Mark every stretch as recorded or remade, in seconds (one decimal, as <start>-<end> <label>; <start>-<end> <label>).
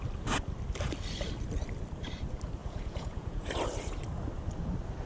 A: 0.0-2.6 recorded; 2.6-3.5 remade; 3.5-5.1 recorded